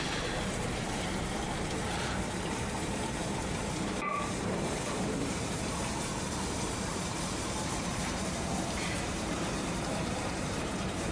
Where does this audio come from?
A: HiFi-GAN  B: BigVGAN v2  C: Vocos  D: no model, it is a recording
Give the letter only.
B